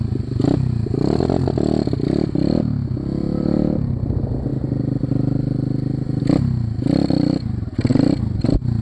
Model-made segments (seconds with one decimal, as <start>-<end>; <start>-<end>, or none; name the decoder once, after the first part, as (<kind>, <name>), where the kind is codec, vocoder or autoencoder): none